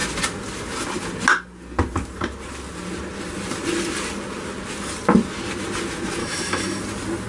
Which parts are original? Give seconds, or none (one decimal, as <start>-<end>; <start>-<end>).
0.0-6.2; 6.8-7.3

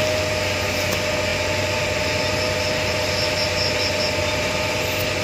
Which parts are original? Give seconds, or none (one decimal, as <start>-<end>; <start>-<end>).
0.0-5.2

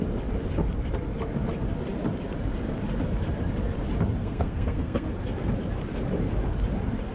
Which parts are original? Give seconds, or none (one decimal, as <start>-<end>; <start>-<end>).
0.0-4.2; 5.1-7.1